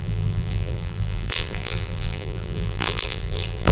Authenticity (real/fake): fake